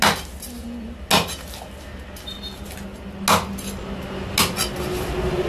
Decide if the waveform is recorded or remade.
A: recorded